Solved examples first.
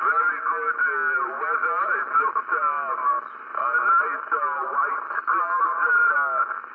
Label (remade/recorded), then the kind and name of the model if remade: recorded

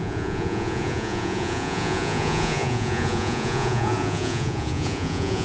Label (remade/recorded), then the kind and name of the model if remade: remade, vocoder, Vocos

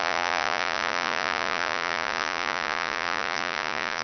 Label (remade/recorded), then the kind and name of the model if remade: remade, vocoder, Vocos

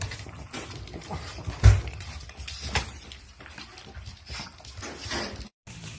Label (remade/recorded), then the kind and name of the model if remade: recorded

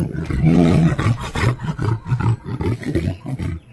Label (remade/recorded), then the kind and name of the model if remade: remade, vocoder, Vocos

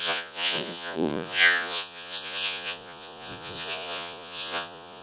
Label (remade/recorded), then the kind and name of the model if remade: remade, vocoder, Vocos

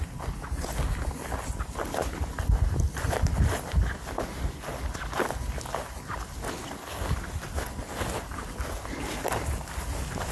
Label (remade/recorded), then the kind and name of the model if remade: recorded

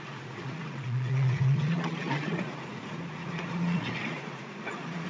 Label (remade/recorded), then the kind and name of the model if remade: remade, vocoder, Vocos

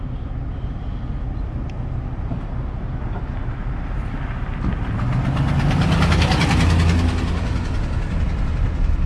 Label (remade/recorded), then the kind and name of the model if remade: recorded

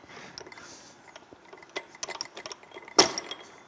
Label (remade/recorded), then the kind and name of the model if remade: recorded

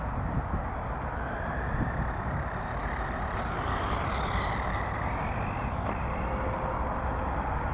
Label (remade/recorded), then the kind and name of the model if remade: recorded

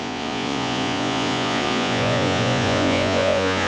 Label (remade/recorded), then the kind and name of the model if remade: remade, vocoder, Vocos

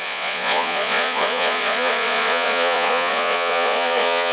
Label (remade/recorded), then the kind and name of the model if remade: remade, vocoder, Vocos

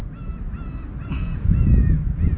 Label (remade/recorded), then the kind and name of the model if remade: recorded